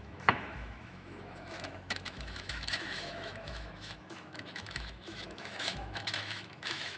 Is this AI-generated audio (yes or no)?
yes